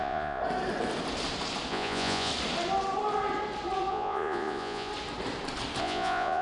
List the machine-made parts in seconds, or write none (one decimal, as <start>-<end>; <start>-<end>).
0.0-0.4; 1.7-2.3; 3.9-4.9; 5.8-6.4